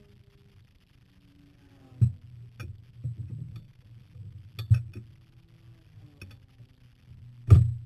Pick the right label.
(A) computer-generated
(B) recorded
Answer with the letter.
B